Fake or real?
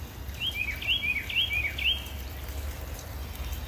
real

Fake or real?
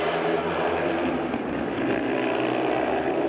fake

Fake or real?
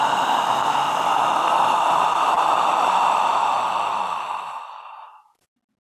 real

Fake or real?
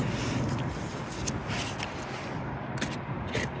real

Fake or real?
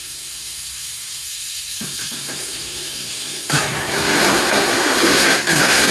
fake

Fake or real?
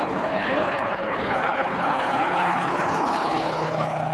fake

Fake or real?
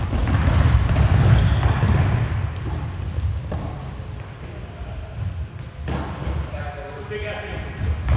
real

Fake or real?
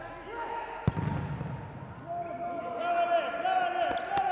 real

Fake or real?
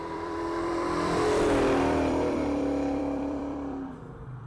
fake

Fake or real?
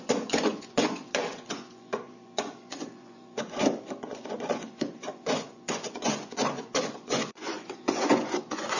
fake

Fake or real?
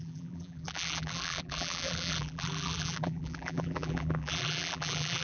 fake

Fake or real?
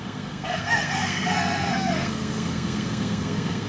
fake